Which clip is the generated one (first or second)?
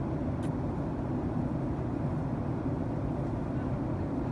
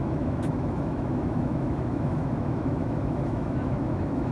second